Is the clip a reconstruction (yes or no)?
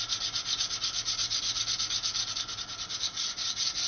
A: no